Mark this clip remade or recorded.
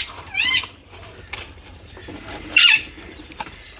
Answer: remade